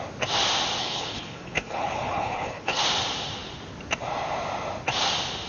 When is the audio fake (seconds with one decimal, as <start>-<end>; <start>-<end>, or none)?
0.8-2.8